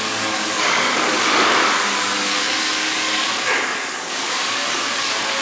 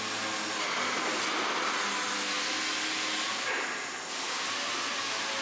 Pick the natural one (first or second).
second